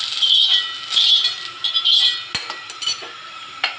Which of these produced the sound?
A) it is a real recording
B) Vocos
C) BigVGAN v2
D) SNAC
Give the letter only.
A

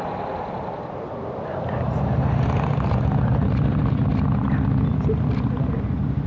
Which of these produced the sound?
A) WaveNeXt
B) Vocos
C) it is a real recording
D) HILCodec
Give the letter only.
C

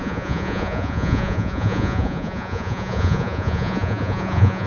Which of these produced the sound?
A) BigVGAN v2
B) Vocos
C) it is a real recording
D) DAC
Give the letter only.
B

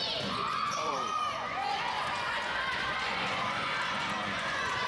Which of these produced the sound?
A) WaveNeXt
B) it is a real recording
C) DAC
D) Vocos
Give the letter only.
D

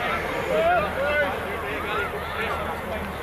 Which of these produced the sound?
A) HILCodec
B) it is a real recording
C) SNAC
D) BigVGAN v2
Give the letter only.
B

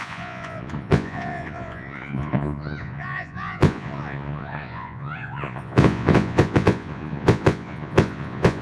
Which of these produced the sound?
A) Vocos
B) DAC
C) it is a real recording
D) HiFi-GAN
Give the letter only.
A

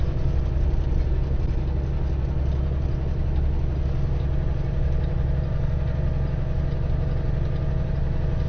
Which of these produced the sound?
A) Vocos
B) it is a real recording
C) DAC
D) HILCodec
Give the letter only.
B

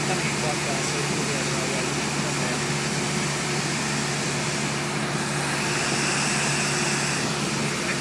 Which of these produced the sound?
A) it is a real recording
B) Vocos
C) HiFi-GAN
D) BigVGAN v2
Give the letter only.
A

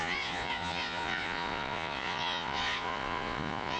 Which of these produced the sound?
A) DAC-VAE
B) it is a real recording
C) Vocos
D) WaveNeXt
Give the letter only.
C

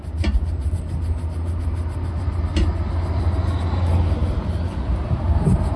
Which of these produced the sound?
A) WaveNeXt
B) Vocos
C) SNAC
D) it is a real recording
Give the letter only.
D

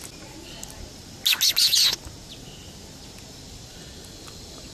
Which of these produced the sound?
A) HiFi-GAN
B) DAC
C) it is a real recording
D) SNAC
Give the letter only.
C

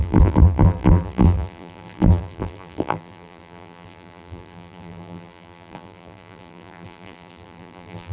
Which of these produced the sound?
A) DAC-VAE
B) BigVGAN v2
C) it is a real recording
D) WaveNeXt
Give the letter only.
B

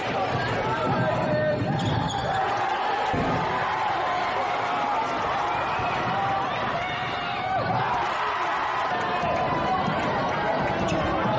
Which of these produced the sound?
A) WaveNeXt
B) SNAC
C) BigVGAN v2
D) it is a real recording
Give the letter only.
D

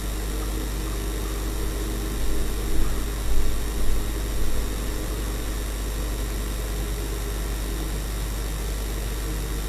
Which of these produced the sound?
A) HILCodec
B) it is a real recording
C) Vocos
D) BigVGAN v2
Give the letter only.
B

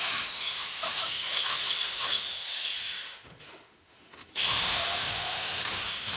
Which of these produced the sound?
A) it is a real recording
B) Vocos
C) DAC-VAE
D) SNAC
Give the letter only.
C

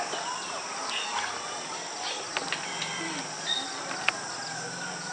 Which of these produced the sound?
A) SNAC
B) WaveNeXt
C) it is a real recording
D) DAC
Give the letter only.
C